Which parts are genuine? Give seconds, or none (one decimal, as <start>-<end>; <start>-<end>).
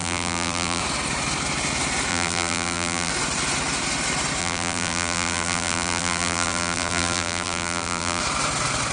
0.8-2.1; 3.1-4.4; 8.2-8.9